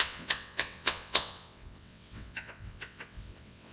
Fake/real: fake